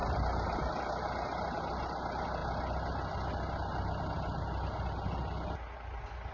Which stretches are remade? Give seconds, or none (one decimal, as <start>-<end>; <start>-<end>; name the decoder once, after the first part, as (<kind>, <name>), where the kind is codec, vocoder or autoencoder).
none